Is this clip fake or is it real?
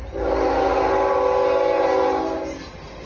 real